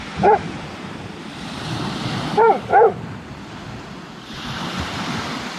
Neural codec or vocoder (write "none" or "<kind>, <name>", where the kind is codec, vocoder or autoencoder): vocoder, BigVGAN v2